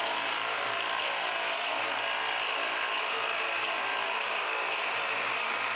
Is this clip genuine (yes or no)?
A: yes